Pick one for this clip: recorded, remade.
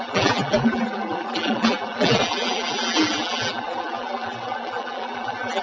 remade